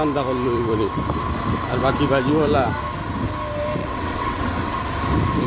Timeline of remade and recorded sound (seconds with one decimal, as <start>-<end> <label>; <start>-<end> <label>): 0.0-3.8 recorded; 3.8-4.8 remade; 4.8-5.5 recorded